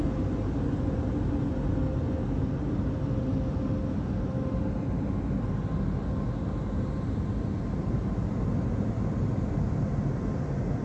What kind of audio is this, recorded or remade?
recorded